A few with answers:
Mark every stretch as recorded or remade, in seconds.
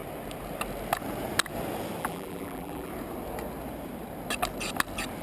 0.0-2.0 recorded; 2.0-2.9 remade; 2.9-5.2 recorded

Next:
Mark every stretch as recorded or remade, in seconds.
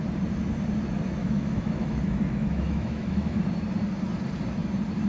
0.0-1.2 recorded; 1.2-3.4 remade; 3.4-5.1 recorded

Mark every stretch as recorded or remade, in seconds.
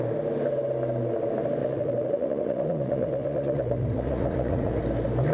0.0-1.6 recorded; 1.6-4.8 remade; 4.8-5.3 recorded